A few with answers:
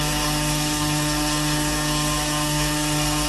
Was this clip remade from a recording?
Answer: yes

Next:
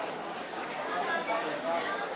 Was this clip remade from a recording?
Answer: yes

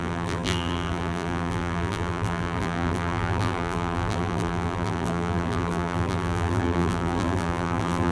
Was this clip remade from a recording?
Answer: yes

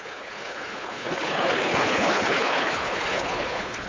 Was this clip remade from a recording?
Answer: yes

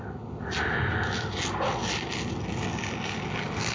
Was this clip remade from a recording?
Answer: no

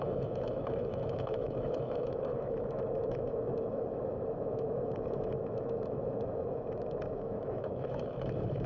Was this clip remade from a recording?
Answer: yes